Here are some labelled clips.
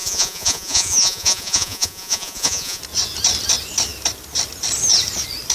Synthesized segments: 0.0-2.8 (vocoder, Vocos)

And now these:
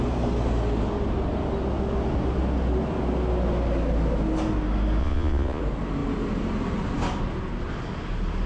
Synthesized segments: 5.0-5.6 (vocoder, Vocos)

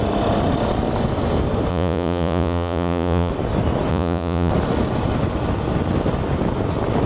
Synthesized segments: 1.7-3.3 (vocoder, Vocos); 3.9-4.5

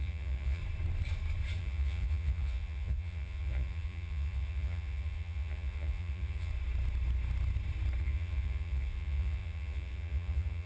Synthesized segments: 0.0-0.6 (vocoder, Vocos); 1.6-6.5; 8.0-10.7

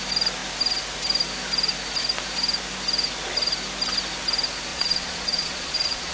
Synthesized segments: 4.7-6.1 (vocoder, Vocos)